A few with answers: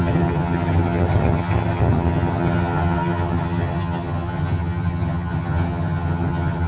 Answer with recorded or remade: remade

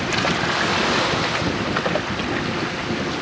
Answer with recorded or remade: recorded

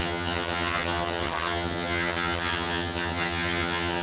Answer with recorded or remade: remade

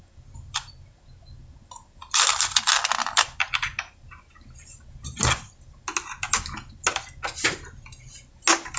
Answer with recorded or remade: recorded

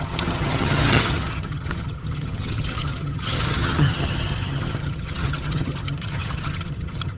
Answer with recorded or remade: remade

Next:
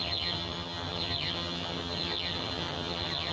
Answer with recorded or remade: remade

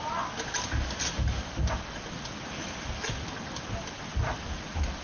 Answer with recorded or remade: recorded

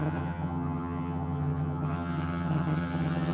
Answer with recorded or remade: remade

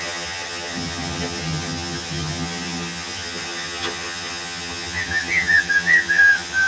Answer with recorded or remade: remade